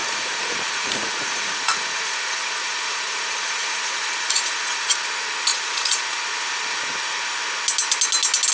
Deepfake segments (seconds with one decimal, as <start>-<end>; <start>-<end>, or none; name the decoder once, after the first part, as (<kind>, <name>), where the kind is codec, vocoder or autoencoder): 0.0-4.9 (vocoder, Vocos); 5.5-6.0